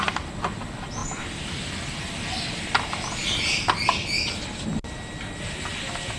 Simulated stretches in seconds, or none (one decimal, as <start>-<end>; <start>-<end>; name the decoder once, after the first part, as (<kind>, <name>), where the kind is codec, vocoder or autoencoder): 1.0-1.7 (vocoder, BigVGAN v2)